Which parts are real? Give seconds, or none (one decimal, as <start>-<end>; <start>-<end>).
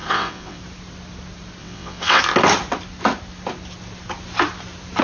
0.6-1.6; 2.2-5.0